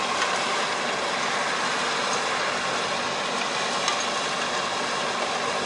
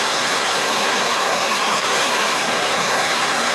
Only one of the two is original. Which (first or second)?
first